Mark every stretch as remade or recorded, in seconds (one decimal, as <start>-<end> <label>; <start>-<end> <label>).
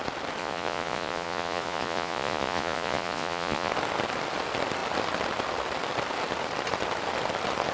0.0-0.4 recorded; 0.4-3.7 remade; 3.7-7.7 recorded